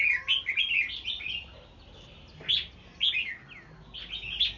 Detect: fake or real real